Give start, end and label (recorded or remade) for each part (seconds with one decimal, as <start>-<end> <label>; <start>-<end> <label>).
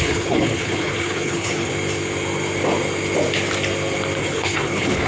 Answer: 0.0-1.7 remade; 1.7-4.2 recorded; 4.2-5.1 remade